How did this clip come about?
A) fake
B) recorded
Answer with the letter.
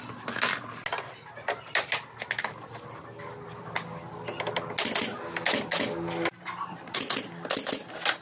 B